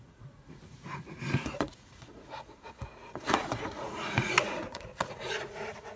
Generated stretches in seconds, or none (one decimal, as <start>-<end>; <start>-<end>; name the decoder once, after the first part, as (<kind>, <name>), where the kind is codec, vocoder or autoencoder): 0.0-6.0 (vocoder, Vocos)